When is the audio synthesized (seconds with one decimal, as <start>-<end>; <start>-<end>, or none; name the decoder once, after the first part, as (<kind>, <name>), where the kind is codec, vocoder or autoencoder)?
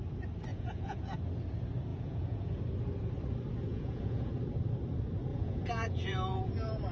0.5-1.0 (vocoder, Vocos); 1.9-2.6; 3.7-4.3; 5.3-6.5